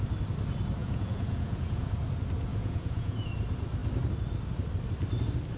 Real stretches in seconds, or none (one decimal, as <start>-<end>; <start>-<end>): 0.0-0.8; 2.0-2.5; 3.3-5.6

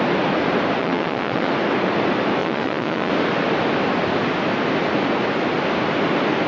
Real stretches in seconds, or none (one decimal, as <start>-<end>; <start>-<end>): 0.0-0.8; 1.5-2.4; 3.1-6.5

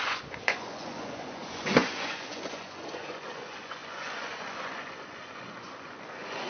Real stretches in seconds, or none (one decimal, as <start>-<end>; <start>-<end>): none